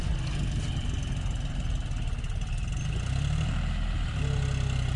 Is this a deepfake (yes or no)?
no